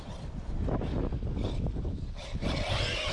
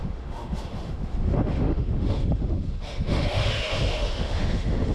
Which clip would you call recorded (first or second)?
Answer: first